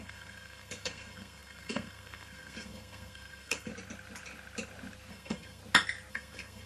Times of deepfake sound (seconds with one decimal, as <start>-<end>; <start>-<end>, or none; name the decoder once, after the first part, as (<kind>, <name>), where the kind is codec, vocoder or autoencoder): 0.0-3.7 (codec, SNAC); 5.1-5.6; 6.1-6.7

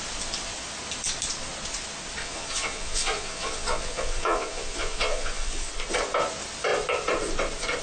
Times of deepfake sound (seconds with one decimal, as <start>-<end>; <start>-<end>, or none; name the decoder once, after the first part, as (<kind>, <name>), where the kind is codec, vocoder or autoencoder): 2.2-5.7 (vocoder, Vocos)

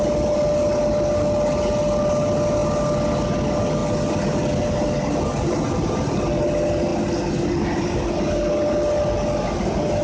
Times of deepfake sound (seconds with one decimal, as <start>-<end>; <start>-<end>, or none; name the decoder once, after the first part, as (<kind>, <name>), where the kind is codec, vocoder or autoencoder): none

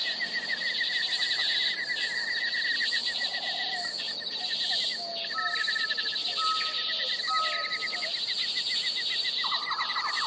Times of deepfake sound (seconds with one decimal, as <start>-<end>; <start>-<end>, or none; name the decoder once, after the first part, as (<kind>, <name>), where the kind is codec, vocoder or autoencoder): 3.0-4.0 (vocoder, BigVGAN v2)

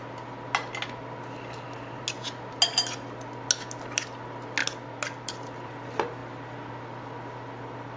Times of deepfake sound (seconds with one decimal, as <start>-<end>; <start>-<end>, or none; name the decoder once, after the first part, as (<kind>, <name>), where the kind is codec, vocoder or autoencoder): none